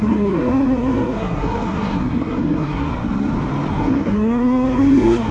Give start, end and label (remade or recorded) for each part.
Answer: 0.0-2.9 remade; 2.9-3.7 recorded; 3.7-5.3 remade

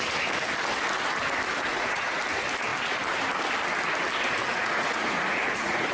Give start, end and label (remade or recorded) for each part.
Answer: 0.0-1.7 recorded; 1.7-2.2 remade; 2.2-4.5 recorded; 4.5-5.9 remade

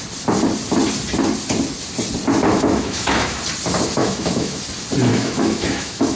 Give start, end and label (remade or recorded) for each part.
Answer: 0.0-2.5 recorded; 2.5-3.4 remade; 3.4-4.0 recorded; 4.0-4.6 remade; 4.6-5.1 recorded; 5.1-6.2 remade

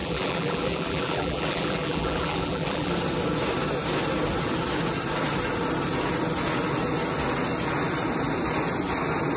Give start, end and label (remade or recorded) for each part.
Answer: 0.0-2.9 remade; 2.9-9.4 recorded

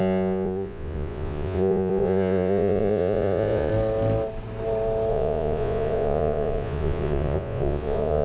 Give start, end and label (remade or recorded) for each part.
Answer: 0.0-3.7 remade; 3.7-5.1 recorded; 5.1-8.2 remade

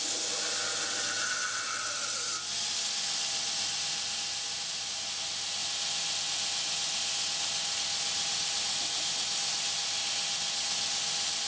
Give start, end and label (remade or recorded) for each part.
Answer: 0.0-11.5 recorded

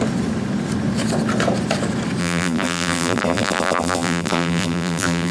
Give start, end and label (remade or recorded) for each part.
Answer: 0.0-2.2 recorded; 2.2-5.3 remade

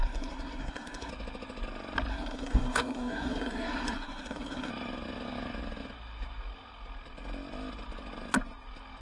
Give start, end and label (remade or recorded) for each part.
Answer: 0.0-1.1 remade; 1.1-2.1 recorded; 2.1-4.7 remade; 4.7-9.0 recorded